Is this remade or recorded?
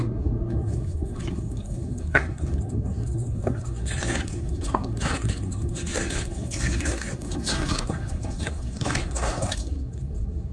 remade